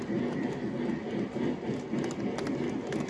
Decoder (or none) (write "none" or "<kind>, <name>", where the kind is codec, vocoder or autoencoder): none